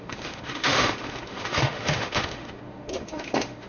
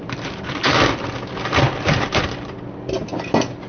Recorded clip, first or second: second